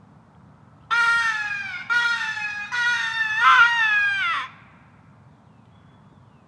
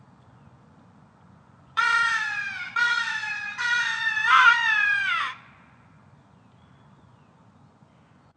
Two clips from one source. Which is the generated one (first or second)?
second